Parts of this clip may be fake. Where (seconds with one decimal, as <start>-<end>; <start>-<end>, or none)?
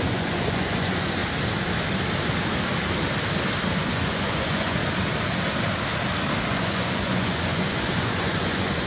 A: 0.0-1.2; 3.8-4.8; 6.5-8.9